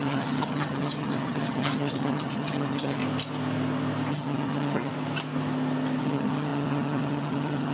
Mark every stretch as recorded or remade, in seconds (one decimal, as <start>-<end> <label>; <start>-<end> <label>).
0.0-3.0 remade; 3.0-4.1 recorded; 4.1-4.9 remade; 4.9-6.0 recorded; 6.0-7.7 remade